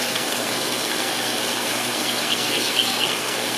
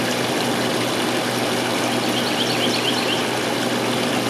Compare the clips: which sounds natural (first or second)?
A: second